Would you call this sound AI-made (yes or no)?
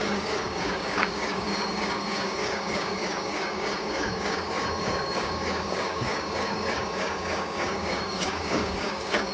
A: yes